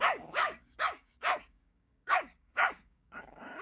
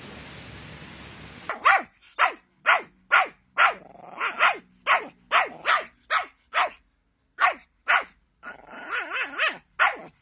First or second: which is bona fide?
second